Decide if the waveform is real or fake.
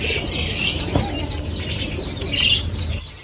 real